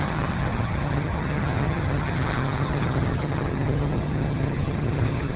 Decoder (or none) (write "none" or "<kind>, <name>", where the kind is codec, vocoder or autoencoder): vocoder, HiFi-GAN